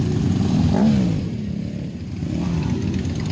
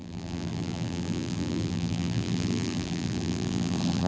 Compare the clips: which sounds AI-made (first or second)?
second